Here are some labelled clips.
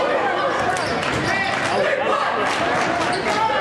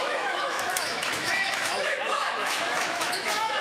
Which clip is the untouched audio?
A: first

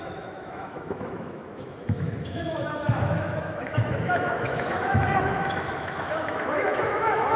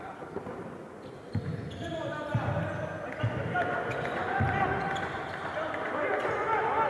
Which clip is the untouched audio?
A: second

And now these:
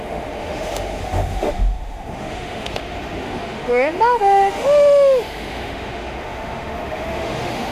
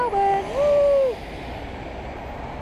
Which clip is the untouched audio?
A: second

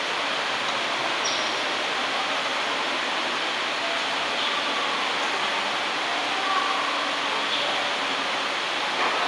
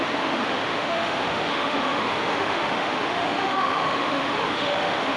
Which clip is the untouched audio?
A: first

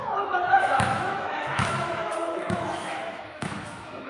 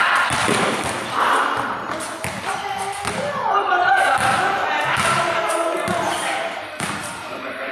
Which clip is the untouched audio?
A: second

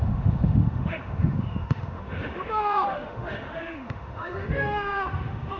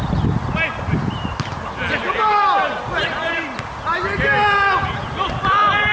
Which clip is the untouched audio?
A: second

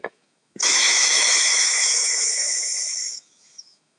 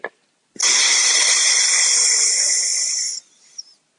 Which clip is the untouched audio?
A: second